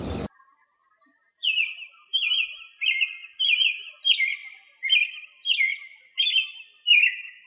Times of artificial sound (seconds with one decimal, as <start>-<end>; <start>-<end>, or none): 1.0-3.9